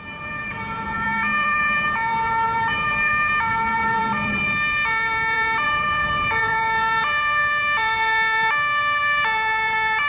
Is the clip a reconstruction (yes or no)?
yes